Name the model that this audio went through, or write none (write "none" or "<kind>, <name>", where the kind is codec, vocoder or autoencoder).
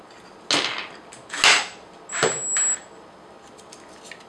none